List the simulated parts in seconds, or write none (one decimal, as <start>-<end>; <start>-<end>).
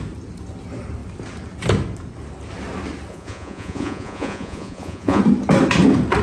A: 3.1-5.2